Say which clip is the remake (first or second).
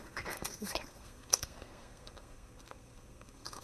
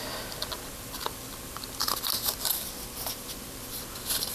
first